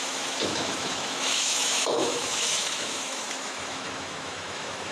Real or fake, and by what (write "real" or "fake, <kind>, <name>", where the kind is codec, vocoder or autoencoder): fake, autoencoder, DAC-VAE